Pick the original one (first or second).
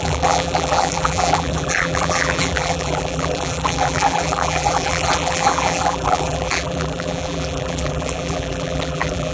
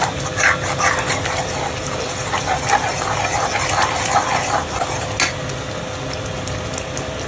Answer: second